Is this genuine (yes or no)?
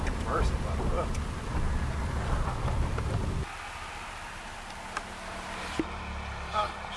yes